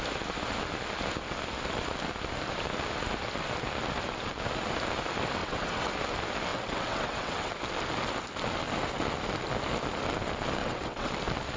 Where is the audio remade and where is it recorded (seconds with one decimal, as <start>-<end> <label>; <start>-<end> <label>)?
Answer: 0.0-5.4 recorded; 5.4-5.9 remade; 5.9-6.5 recorded; 6.5-7.5 remade; 7.5-10.6 recorded; 10.6-11.1 remade; 11.1-11.6 recorded

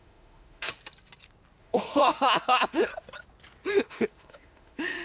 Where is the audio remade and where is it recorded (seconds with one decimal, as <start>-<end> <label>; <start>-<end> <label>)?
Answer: 0.0-0.7 remade; 0.7-1.6 recorded; 1.6-2.9 remade; 2.9-3.7 recorded; 3.7-5.0 remade

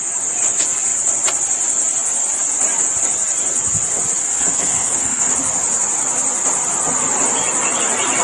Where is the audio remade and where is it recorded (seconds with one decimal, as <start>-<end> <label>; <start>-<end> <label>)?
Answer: 0.0-4.2 recorded; 4.2-5.3 remade; 5.3-8.2 recorded

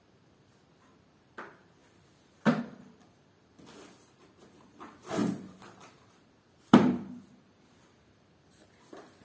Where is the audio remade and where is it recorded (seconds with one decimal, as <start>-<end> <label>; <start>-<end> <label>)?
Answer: 0.0-9.2 remade

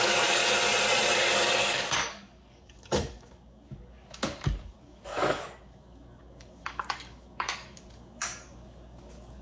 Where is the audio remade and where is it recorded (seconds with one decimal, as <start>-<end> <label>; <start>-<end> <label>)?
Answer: 0.0-0.4 remade; 0.4-1.6 recorded; 1.6-9.4 remade